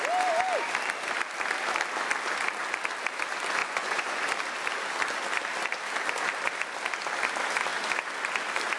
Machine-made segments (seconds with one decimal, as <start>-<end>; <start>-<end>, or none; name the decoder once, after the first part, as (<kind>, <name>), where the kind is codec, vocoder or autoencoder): 3.6-4.2 (vocoder, Vocos)